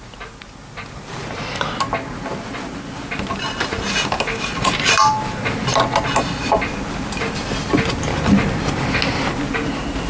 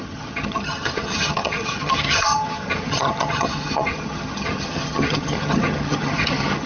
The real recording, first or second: first